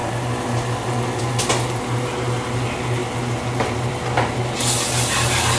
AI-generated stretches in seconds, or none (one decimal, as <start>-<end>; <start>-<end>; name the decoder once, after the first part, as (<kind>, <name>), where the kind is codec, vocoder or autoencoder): none